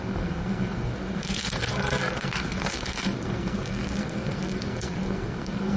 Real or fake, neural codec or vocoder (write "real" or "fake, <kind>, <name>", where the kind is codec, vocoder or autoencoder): fake, codec, SNAC